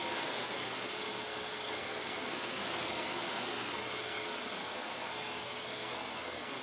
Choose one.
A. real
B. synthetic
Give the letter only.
B